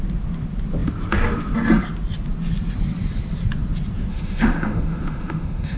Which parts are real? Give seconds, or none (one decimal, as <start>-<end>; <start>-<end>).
0.0-4.1